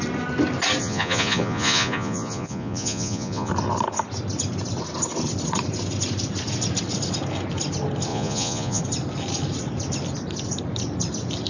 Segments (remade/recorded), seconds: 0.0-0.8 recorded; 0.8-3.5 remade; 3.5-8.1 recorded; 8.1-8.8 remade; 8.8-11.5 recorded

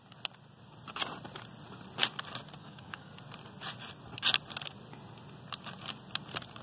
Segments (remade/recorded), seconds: 0.0-2.6 recorded; 2.6-3.1 remade; 3.1-6.6 recorded

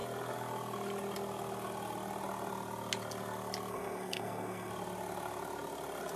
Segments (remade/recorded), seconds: 0.0-3.7 recorded; 3.7-4.7 remade; 4.7-6.2 recorded

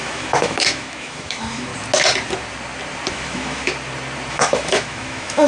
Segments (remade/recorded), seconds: 0.0-1.7 remade; 1.7-3.1 recorded; 3.1-3.7 remade; 3.7-4.3 recorded; 4.3-5.5 remade

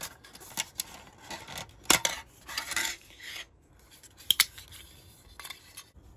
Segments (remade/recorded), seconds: 0.0-2.8 recorded; 2.8-3.7 remade; 3.7-6.2 recorded